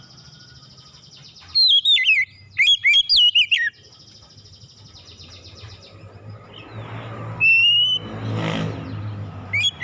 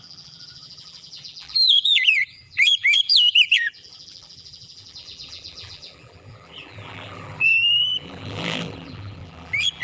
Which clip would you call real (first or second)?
first